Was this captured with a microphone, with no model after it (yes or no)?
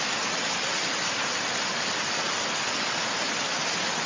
yes